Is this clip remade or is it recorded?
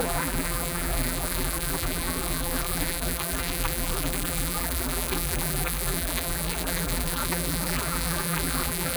remade